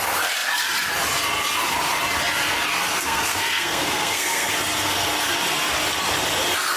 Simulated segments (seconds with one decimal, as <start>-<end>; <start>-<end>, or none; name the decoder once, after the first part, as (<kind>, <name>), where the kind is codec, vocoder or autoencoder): 2.9-4.5 (codec, SNAC)